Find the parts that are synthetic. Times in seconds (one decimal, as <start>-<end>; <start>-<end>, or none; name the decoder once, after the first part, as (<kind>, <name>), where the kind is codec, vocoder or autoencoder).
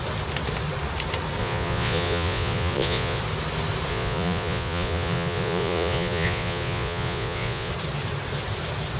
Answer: 1.4-3.2 (vocoder, Vocos); 3.9-7.7